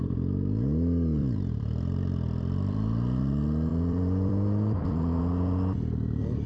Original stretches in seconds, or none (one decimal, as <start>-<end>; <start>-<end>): 0.0-1.2; 3.2-3.7; 5.2-6.5